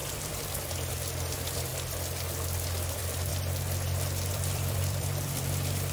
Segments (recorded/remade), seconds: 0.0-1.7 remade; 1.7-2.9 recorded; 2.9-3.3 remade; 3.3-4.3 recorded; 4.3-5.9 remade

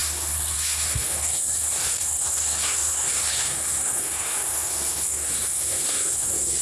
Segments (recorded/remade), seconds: 0.0-6.6 remade

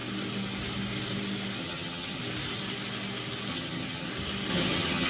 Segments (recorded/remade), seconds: 0.0-1.6 recorded; 1.6-2.2 remade; 2.2-3.5 recorded; 3.5-4.1 remade; 4.1-4.5 recorded; 4.5-5.1 remade

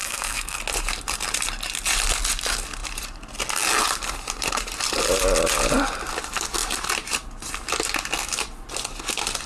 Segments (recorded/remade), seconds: 0.0-0.6 remade; 0.6-9.5 recorded

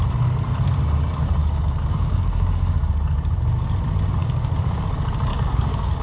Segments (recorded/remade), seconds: 0.0-1.4 recorded; 1.4-2.9 remade; 2.9-4.2 recorded; 4.2-4.8 remade; 4.8-5.3 recorded; 5.3-6.0 remade

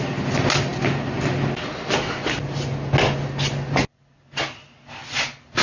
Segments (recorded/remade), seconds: 0.0-5.6 recorded

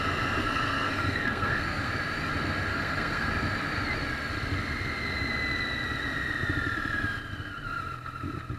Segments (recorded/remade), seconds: 0.0-0.4 recorded; 0.4-1.9 remade; 1.9-2.7 recorded; 2.7-3.3 remade; 3.3-8.6 recorded

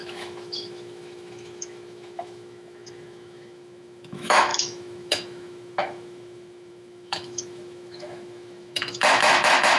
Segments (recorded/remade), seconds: 0.0-9.8 remade